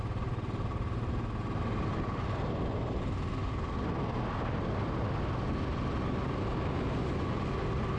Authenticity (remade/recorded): recorded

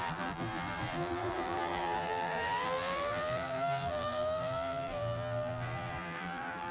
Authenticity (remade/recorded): remade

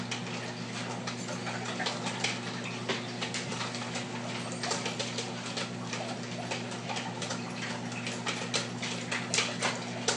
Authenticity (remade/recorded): recorded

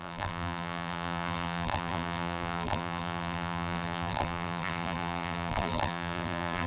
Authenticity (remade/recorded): remade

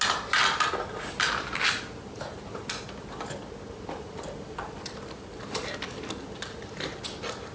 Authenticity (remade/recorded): recorded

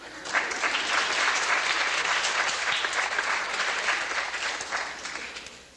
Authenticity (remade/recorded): recorded